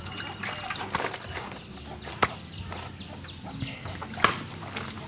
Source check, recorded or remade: recorded